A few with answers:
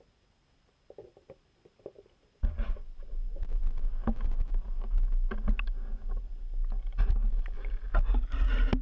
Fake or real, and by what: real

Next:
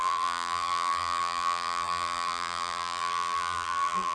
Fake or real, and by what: fake, vocoder, BigVGAN v2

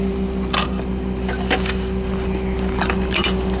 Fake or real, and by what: fake, vocoder, BigVGAN v2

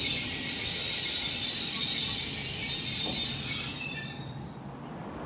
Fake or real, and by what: real